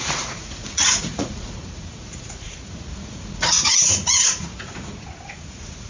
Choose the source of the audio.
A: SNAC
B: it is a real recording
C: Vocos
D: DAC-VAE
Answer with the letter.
C